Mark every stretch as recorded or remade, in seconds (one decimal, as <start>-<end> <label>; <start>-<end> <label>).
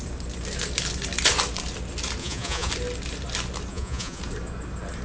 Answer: 0.0-2.2 recorded; 2.2-2.7 remade; 2.7-3.7 recorded; 3.7-4.2 remade; 4.2-5.0 recorded